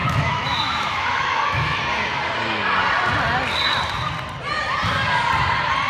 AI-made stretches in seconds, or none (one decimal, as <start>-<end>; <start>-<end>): 0.0-1.8

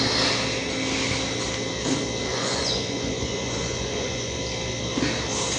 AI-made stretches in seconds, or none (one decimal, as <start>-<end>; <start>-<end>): 2.3-4.4

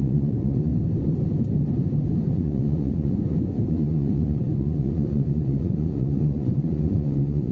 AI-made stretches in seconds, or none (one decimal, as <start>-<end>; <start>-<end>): 0.0-0.7; 2.3-7.5

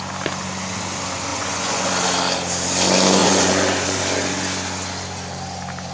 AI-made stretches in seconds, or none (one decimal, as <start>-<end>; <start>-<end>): 1.3-1.9; 3.2-4.0

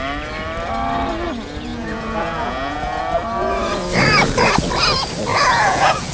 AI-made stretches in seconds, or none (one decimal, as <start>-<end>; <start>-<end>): 1.7-3.0; 5.3-6.1

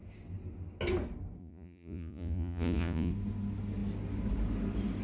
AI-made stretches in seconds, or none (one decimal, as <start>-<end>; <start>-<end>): 1.4-3.1

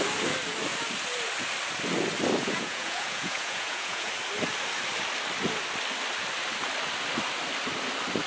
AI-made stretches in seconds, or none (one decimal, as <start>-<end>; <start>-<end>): 2.4-4.1

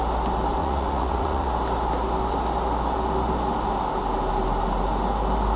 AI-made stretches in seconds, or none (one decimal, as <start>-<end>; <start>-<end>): 0.6-1.5